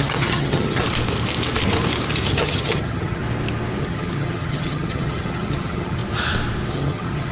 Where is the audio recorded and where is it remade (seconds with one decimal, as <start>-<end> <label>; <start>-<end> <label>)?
0.0-0.8 remade; 0.8-2.3 recorded; 2.3-3.2 remade; 3.2-3.8 recorded; 3.8-6.0 remade; 6.0-6.7 recorded; 6.7-7.3 remade